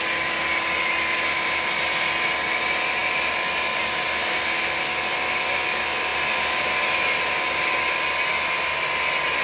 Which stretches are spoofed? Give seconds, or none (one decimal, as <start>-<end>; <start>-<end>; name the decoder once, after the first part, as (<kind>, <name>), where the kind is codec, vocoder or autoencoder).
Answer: none